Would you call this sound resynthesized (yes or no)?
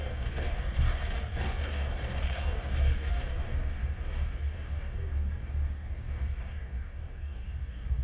yes